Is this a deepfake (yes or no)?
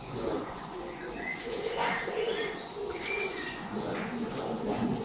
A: yes